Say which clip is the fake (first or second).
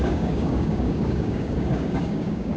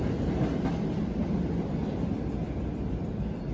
first